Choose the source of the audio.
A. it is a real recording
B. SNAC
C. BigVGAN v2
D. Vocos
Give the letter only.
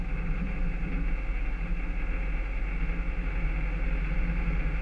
A